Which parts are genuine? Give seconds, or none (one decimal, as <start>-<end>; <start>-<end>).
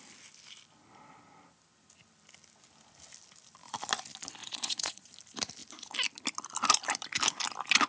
0.0-4.4; 5.1-7.9